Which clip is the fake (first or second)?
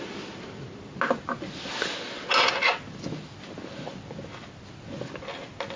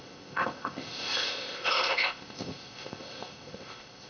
second